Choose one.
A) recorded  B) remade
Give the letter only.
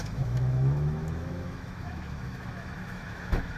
B